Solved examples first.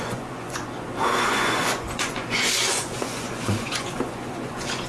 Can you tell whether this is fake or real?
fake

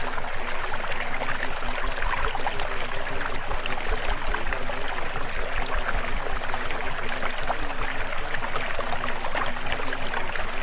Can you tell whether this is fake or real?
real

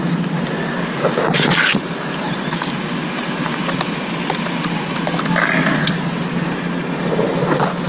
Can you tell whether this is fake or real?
real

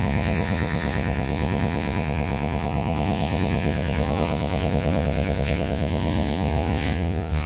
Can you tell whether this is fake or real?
fake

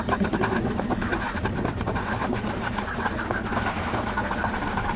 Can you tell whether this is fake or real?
real